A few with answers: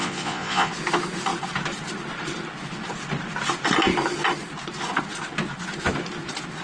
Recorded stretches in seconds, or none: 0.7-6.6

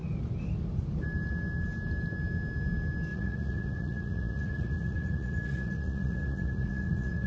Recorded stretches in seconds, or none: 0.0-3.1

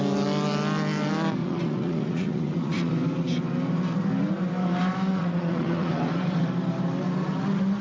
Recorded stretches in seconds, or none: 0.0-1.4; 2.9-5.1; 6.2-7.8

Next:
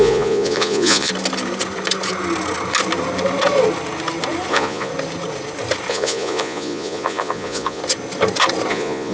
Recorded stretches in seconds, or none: 1.1-4.5; 4.9-5.9; 7.8-8.7